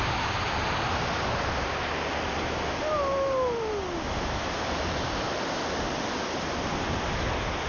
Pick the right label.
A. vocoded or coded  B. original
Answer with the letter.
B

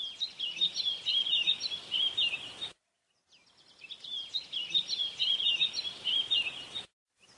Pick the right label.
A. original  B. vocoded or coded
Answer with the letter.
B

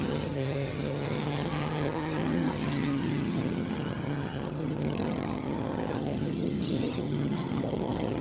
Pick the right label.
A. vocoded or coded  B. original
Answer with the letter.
A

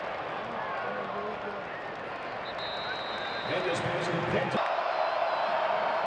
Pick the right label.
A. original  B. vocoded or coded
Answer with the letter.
A